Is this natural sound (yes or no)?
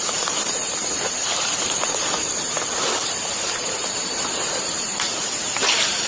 no